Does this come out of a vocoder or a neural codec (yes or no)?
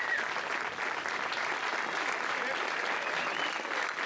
no